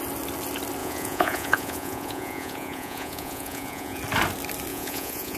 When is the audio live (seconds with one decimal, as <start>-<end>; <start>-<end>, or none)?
0.0-0.8; 4.0-4.7